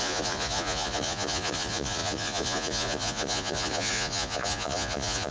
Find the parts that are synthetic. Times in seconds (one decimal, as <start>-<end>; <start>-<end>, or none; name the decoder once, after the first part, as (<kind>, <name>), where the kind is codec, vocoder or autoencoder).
0.0-5.3 (vocoder, Vocos)